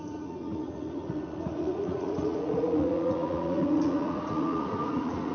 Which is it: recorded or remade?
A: remade